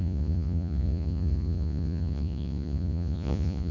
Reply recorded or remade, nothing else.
remade